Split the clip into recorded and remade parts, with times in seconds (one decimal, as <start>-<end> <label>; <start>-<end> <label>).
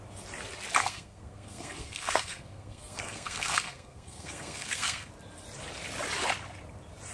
0.0-0.8 recorded; 0.8-5.1 remade; 5.1-7.1 recorded